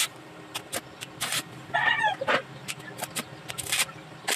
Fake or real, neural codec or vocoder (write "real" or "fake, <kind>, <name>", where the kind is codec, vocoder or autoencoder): real